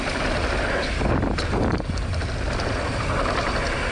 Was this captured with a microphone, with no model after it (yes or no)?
yes